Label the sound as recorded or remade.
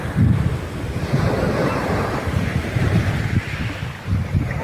recorded